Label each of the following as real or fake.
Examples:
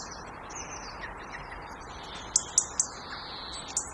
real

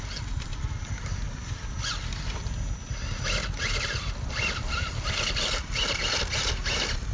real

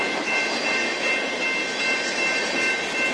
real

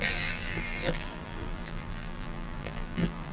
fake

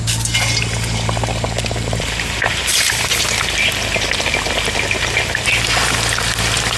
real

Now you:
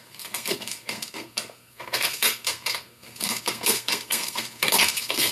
fake